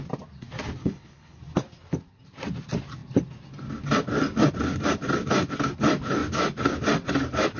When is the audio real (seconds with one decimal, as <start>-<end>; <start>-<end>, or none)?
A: 0.0-0.8; 1.4-7.6